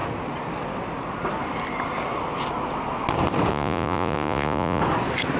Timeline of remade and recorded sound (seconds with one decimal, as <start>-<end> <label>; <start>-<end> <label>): 0.0-3.5 recorded; 3.5-4.8 remade; 4.8-5.4 recorded